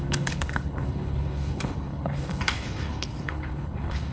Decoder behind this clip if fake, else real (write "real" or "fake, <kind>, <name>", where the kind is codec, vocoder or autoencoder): fake, codec, HILCodec